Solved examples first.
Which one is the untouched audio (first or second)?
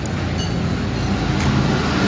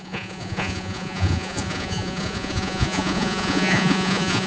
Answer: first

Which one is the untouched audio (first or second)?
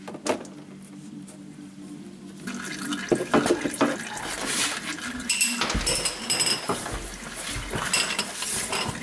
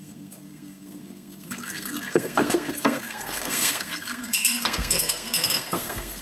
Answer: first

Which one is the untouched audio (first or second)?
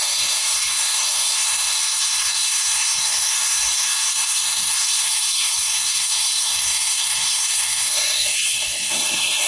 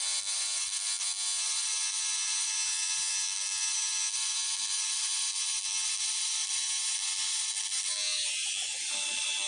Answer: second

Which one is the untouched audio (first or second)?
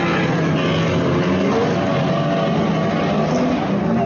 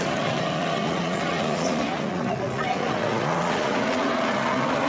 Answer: first